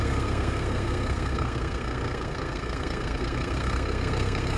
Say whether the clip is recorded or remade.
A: remade